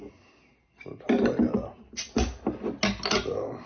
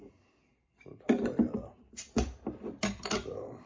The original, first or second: first